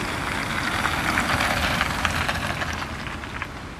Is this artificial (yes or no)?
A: no